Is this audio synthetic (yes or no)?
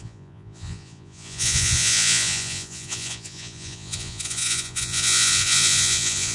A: yes